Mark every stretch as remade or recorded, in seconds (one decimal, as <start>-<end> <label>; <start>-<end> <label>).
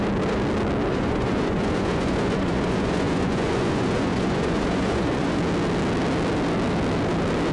0.0-0.9 recorded; 0.9-5.4 remade; 5.4-7.5 recorded